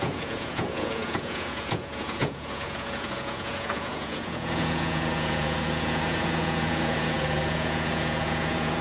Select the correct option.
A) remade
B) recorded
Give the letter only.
A